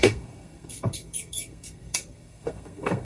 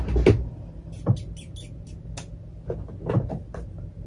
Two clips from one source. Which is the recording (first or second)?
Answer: second